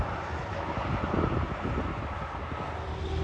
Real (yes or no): yes